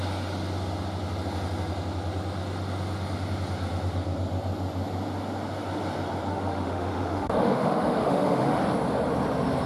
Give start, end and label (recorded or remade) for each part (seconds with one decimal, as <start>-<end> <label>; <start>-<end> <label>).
0.0-6.3 recorded; 6.3-8.6 remade; 8.6-9.7 recorded